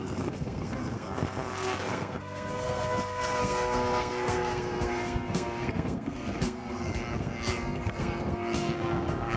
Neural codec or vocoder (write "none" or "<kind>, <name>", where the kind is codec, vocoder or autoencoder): codec, SNAC